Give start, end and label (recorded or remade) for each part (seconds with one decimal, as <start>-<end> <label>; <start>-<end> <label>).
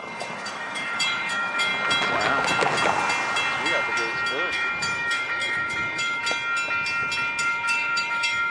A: 0.0-1.7 remade; 1.7-4.5 recorded; 4.5-6.2 remade; 6.2-7.4 recorded; 7.4-8.5 remade